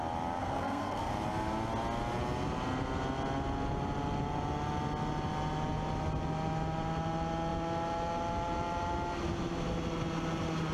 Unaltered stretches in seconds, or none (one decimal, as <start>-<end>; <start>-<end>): 0.0-0.4; 1.1-10.7